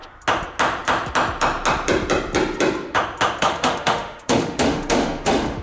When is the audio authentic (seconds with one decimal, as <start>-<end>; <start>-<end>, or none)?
0.0-3.4